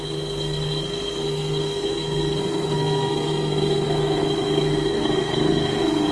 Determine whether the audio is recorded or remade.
remade